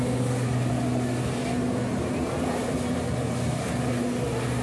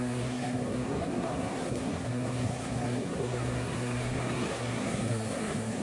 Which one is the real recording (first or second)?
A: first